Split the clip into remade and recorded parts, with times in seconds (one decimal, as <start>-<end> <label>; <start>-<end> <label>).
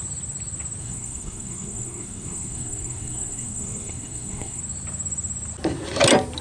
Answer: 0.0-0.8 recorded; 0.8-4.6 remade; 4.6-6.4 recorded